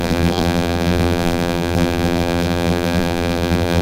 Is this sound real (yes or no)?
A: no